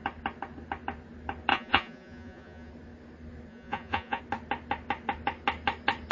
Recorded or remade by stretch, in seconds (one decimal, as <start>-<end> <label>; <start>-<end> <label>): 0.0-1.5 recorded; 1.5-2.7 remade; 2.7-3.5 recorded; 3.5-4.2 remade; 4.2-6.1 recorded